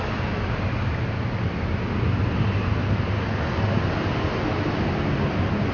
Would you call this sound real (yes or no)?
yes